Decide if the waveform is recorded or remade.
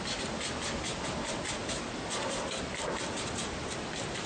recorded